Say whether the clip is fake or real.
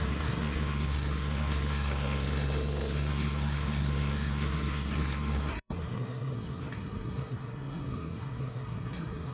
fake